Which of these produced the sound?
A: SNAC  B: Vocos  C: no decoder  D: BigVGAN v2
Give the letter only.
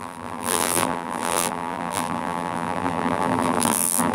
D